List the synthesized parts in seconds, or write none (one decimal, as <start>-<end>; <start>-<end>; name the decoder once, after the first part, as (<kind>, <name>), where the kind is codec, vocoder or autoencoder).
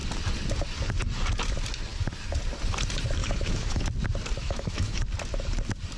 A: 3.2-3.8 (autoencoder, DAC-VAE); 4.4-5.0